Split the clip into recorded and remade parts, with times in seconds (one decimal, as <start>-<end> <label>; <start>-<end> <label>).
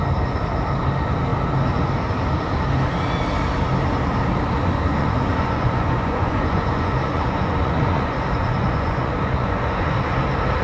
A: 0.0-4.9 recorded; 4.9-10.2 remade; 10.2-10.6 recorded